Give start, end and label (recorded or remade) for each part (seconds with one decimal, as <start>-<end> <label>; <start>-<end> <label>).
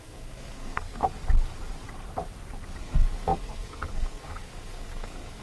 0.0-1.0 remade; 1.0-2.8 recorded; 2.8-5.4 remade